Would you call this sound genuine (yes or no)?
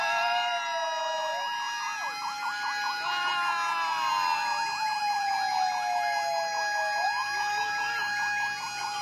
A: yes